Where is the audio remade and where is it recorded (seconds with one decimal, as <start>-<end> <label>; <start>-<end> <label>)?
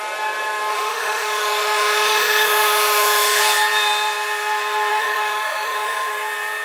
0.0-0.7 recorded; 0.7-3.4 remade; 3.4-4.9 recorded; 4.9-6.1 remade; 6.1-6.6 recorded